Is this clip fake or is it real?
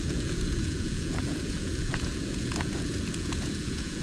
fake